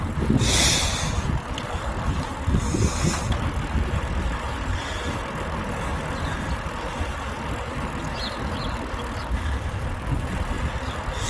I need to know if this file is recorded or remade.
recorded